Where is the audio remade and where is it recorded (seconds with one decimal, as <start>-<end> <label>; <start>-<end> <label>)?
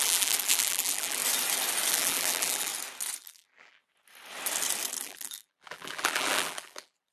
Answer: 0.0-1.2 remade; 1.2-1.9 recorded; 1.9-2.7 remade; 2.7-3.2 recorded; 3.2-3.8 remade; 3.8-5.0 recorded; 5.0-7.1 remade